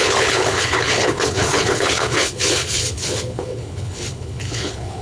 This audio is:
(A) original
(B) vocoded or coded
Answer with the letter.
B